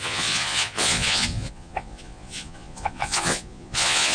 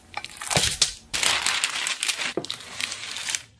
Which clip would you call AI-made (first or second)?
first